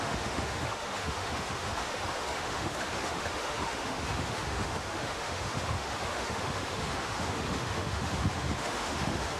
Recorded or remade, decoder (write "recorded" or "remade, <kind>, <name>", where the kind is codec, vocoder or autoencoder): remade, autoencoder, DAC-VAE